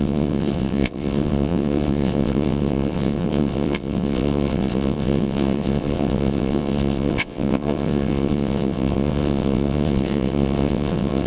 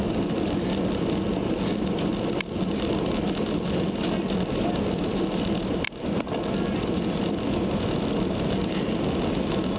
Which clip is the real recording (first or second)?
second